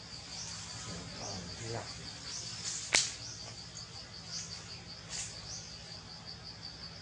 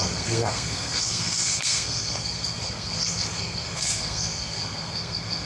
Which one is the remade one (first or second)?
second